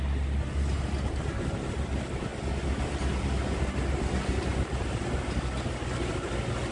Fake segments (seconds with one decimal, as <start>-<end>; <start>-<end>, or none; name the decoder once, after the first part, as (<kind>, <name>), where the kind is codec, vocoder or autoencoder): none

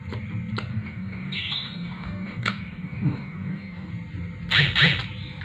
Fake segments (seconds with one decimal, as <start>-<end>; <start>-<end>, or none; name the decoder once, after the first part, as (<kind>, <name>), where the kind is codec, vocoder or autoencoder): 0.7-3.9 (codec, DAC)

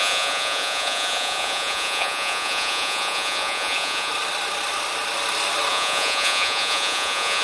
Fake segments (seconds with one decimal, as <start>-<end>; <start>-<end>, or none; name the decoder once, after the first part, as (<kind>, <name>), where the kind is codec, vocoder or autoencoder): 0.0-4.1 (vocoder, Vocos); 5.7-7.4

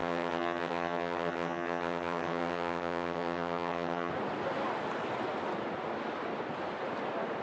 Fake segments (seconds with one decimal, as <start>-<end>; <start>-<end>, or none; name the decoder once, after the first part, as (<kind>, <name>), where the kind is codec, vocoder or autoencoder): 0.0-4.1 (vocoder, HiFi-GAN)